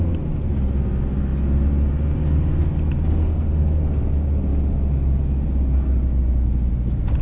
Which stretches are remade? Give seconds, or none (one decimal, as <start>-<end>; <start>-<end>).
3.2-3.8